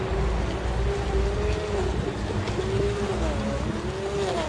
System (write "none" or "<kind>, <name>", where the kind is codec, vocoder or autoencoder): none